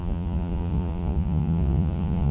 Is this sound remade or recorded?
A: remade